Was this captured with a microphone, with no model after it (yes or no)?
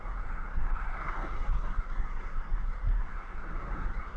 no